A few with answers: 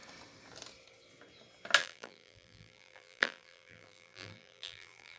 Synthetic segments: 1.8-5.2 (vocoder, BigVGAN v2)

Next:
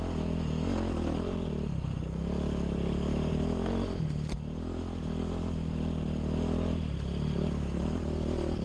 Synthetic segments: none

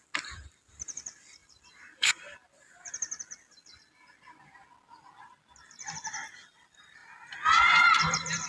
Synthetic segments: 1.4-3.2 (vocoder, BigVGAN v2)

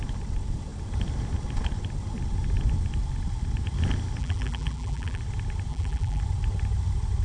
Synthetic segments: 4.2-5.2 (vocoder, BigVGAN v2); 5.7-6.2

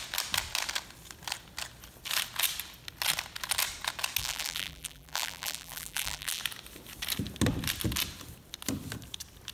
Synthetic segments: 4.2-6.4 (vocoder, BigVGAN v2)

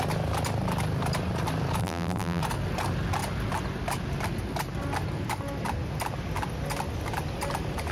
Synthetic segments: 1.8-2.4 (vocoder, BigVGAN v2)